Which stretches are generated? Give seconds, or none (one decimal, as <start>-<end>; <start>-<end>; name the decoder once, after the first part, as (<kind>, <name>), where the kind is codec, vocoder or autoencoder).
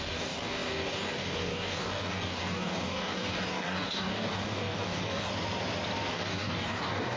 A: 0.0-5.3 (codec, DAC); 6.1-7.2